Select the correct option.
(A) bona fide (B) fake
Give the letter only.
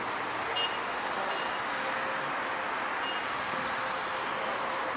A